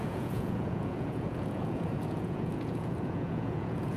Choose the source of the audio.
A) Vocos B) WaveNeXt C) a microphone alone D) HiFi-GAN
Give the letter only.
A